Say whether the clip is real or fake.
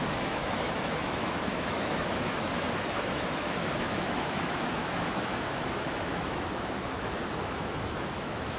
fake